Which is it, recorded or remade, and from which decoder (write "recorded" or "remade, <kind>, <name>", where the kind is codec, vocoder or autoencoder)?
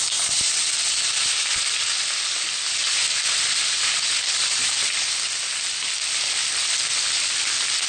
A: recorded